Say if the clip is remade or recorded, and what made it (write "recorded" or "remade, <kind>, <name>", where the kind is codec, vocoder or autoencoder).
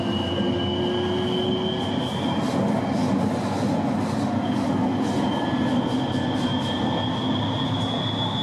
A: recorded